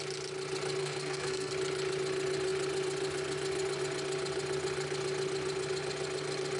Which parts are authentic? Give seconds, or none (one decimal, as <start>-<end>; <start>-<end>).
0.0-0.8; 1.5-6.6